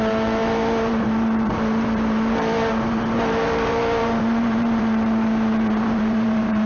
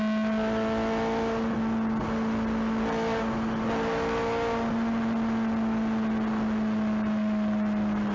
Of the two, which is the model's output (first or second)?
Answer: first